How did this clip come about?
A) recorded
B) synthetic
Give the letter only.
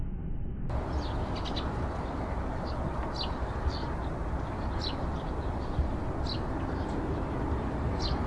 A